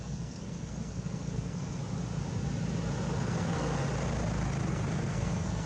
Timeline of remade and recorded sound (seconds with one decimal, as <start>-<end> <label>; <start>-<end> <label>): 0.0-1.8 remade; 1.8-3.2 recorded; 3.2-3.8 remade; 3.8-4.7 recorded; 4.7-5.7 remade

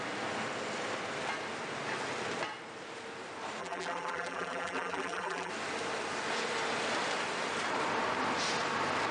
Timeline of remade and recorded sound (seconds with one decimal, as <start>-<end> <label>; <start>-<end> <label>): 0.0-3.6 recorded; 3.6-5.5 remade; 5.5-9.1 recorded

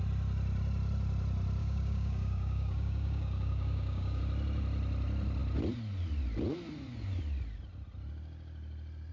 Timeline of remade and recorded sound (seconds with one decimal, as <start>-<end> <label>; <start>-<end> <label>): 0.0-1.6 recorded; 1.6-4.2 remade; 4.2-9.1 recorded

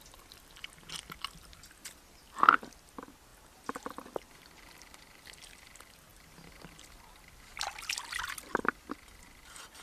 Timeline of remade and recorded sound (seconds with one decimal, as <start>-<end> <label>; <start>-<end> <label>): 0.0-9.8 recorded